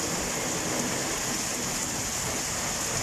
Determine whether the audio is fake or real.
real